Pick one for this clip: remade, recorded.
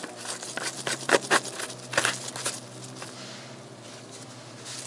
recorded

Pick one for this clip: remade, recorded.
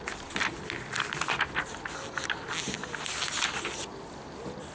recorded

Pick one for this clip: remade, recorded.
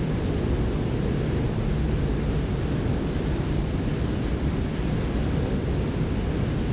recorded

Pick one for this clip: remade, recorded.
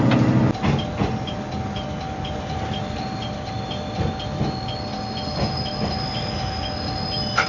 recorded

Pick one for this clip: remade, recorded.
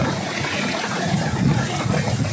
remade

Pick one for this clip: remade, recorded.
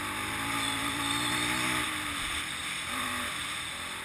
recorded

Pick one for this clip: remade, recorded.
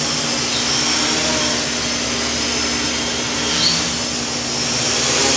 recorded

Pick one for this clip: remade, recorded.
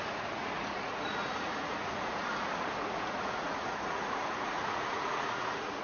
remade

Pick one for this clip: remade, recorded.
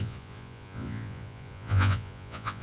remade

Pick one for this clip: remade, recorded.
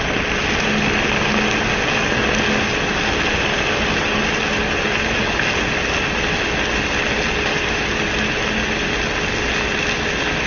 recorded